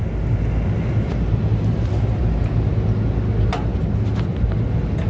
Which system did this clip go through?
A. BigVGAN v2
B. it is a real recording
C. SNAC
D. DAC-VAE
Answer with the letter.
B